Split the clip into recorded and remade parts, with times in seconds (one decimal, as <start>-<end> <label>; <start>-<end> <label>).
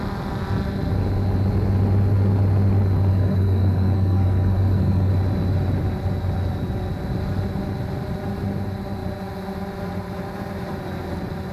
0.0-3.1 recorded; 3.1-5.1 remade; 5.1-11.5 recorded